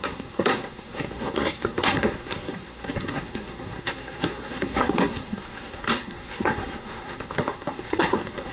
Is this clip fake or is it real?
fake